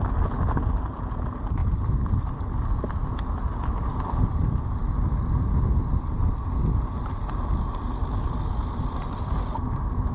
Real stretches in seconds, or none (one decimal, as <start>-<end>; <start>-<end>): 0.0-10.1